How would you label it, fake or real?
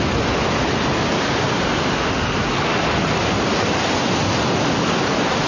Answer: real